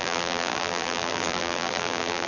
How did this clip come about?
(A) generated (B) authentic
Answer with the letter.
A